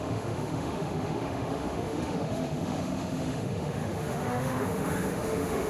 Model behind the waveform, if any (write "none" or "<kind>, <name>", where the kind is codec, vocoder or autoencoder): autoencoder, DAC-VAE